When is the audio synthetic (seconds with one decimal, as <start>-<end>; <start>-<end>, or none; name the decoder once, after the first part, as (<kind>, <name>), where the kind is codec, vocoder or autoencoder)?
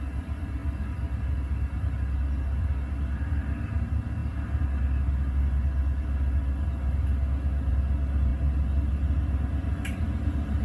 none